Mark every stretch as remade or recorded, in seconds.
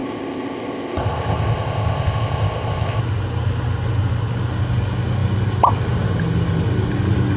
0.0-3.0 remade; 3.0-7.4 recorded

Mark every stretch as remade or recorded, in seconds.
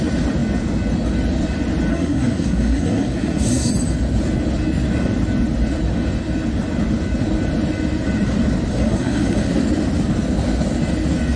0.0-1.9 recorded; 1.9-3.7 remade; 3.7-8.7 recorded; 8.7-9.5 remade; 9.5-11.4 recorded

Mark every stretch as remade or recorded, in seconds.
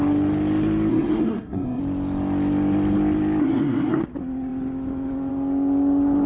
0.0-0.9 recorded; 0.9-1.8 remade; 1.8-3.4 recorded; 3.4-4.0 remade; 4.0-6.3 recorded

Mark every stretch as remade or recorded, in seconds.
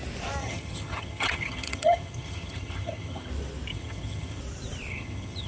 0.0-0.4 recorded; 0.4-3.3 remade; 3.3-3.7 recorded; 3.7-4.4 remade; 4.4-4.9 recorded; 4.9-5.5 remade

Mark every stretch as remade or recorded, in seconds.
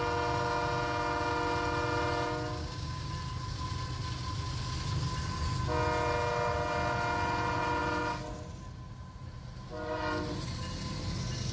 0.0-2.6 recorded; 2.6-3.1 remade; 3.1-11.5 recorded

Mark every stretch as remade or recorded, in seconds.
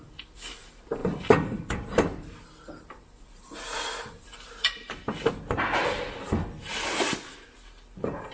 0.0-1.0 recorded; 1.0-5.3 remade; 5.3-8.3 recorded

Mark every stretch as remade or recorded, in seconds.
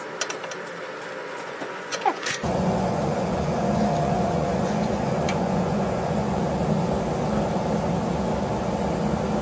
0.0-1.2 recorded; 1.2-6.4 remade; 6.4-9.4 recorded